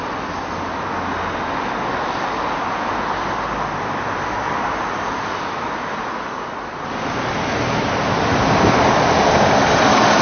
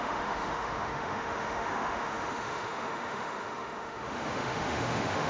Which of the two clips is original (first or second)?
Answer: first